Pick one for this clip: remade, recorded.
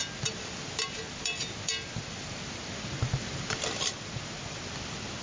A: recorded